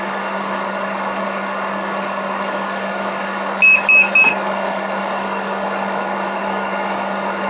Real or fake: fake